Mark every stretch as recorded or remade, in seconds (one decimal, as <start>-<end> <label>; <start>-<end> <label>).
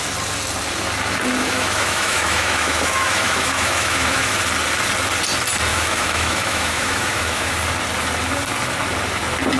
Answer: 0.0-1.4 recorded; 1.4-4.4 remade; 4.4-5.7 recorded; 5.7-7.5 remade; 7.5-9.6 recorded